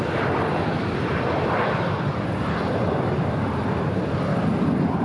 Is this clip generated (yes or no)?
yes